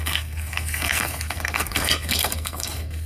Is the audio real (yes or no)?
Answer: no